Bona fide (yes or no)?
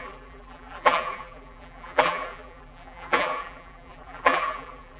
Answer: no